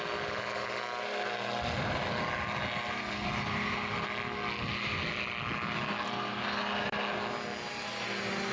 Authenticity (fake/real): real